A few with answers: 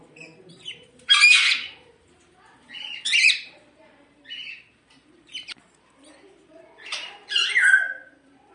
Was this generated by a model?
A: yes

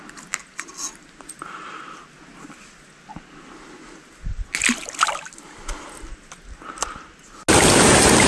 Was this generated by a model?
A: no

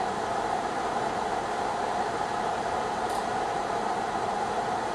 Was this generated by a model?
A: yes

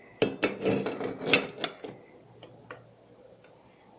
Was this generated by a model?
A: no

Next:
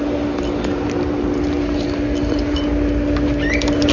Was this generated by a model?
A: no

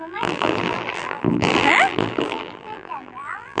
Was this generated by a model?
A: yes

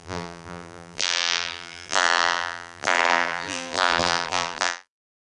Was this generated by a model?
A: yes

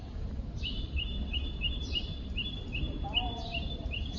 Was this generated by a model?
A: yes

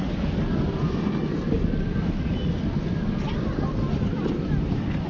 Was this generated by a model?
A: no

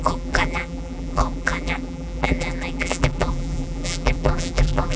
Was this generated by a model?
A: yes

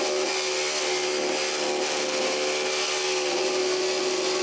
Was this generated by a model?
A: no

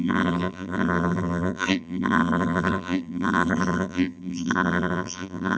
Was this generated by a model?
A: yes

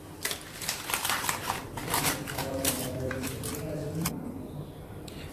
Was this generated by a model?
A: yes